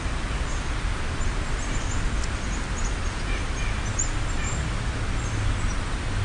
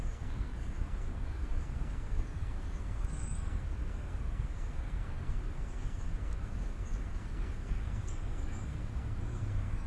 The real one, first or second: first